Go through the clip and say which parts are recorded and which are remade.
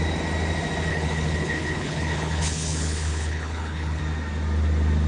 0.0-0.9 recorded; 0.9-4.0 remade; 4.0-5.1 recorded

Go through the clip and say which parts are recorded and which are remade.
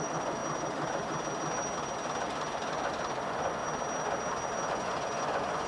0.0-0.4 remade; 0.4-3.2 recorded; 3.2-3.6 remade; 3.6-4.7 recorded; 4.7-5.7 remade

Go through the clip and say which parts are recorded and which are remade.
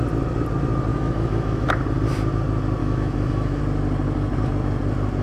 0.0-0.9 recorded; 0.9-1.7 remade; 1.7-2.8 recorded; 2.8-3.6 remade; 3.6-5.2 recorded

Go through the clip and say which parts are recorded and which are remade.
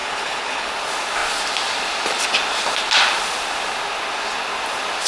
0.0-0.7 remade; 0.7-5.1 recorded